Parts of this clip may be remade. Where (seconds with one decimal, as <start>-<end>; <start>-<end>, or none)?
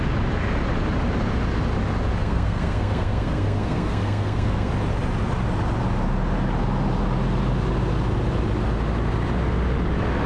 2.2-4.7